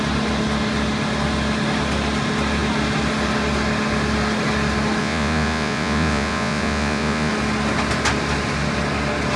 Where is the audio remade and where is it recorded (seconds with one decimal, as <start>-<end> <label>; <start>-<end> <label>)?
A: 0.0-5.0 recorded; 5.0-7.3 remade; 7.3-9.4 recorded